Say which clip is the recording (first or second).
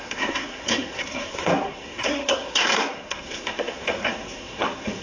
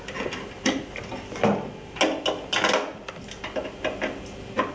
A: second